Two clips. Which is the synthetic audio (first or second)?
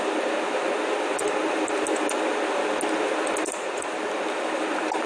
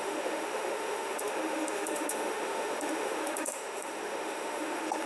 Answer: second